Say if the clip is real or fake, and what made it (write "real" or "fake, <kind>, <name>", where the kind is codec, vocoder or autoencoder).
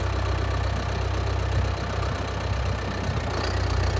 real